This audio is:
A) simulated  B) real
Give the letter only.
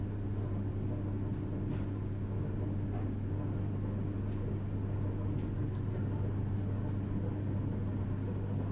B